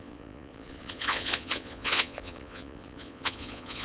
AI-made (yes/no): yes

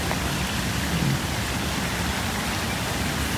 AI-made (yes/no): no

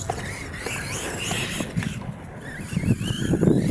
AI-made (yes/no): no